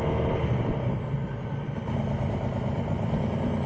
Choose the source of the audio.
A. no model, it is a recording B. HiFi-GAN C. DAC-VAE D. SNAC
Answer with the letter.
A